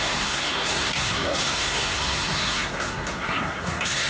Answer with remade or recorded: remade